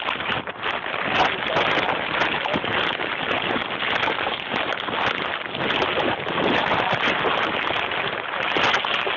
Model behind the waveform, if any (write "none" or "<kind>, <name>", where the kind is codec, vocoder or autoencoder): none